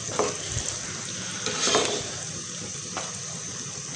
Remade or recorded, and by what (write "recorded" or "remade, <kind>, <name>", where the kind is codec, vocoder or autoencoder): recorded